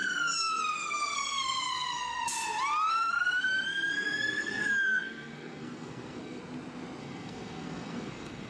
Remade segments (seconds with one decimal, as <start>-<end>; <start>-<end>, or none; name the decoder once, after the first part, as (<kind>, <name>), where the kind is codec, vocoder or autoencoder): 0.0-2.3 (codec, SNAC); 2.9-6.4; 7.0-8.5